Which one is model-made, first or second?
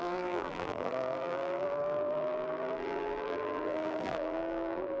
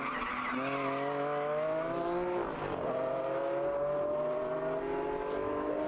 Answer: first